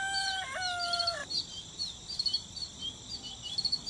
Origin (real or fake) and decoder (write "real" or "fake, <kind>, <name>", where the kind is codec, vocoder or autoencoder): real